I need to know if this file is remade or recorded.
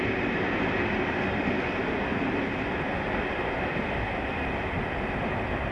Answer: recorded